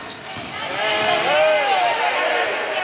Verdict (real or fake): real